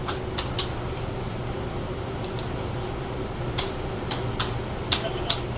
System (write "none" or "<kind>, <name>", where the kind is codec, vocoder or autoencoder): none